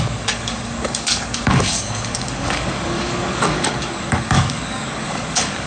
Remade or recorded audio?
remade